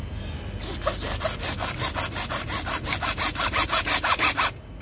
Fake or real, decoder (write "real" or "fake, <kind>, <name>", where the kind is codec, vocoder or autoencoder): real